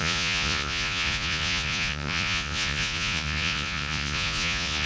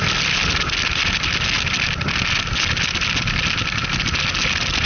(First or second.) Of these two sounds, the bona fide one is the second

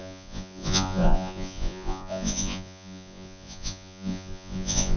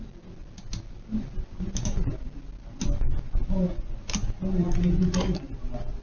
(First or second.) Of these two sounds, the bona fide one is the second